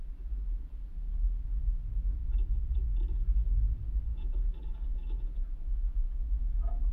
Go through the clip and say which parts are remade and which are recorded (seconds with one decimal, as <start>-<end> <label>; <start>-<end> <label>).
0.0-2.2 recorded; 2.2-3.0 remade; 3.0-4.1 recorded; 4.1-6.9 remade